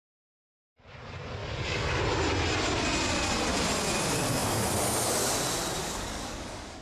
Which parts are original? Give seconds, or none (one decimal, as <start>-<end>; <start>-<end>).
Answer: 0.0-1.4; 2.0-5.8